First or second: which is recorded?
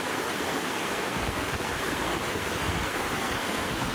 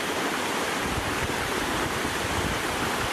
second